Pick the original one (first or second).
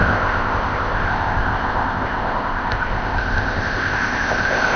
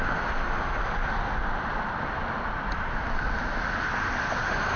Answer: second